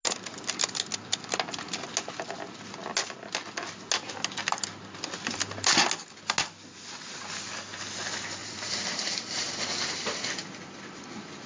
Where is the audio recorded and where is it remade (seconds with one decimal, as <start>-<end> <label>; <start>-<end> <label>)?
0.0-8.4 recorded; 8.4-9.5 remade; 9.5-11.5 recorded